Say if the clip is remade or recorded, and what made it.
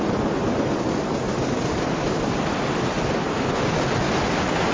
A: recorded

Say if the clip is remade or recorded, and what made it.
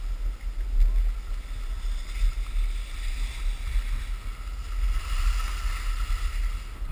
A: recorded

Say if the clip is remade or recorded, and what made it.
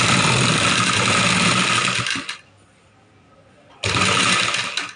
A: recorded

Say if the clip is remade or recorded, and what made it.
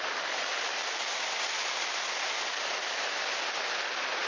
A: recorded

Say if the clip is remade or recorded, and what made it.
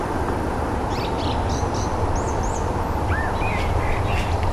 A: remade, vocoder, BigVGAN v2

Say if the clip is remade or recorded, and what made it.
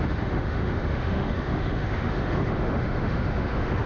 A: remade, autoencoder, DAC-VAE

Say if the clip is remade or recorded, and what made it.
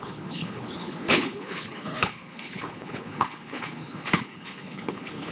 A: remade, codec, HILCodec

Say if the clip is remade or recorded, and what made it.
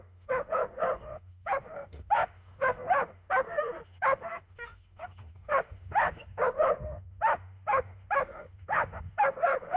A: remade, autoencoder, DAC-VAE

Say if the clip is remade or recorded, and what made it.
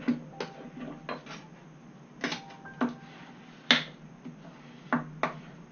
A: recorded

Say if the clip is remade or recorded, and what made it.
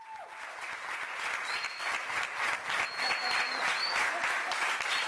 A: recorded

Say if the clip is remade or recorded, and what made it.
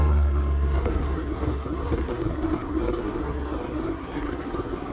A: remade, codec, SNAC